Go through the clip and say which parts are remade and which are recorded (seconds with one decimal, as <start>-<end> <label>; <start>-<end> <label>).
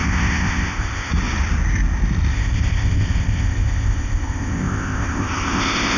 0.0-1.1 remade; 1.1-2.3 recorded; 2.3-6.0 remade